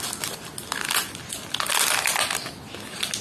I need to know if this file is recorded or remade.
recorded